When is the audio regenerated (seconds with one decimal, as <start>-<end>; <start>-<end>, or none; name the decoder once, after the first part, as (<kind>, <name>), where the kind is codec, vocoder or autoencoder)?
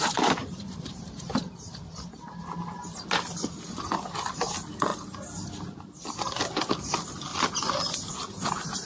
0.4-2.4 (vocoder, BigVGAN v2)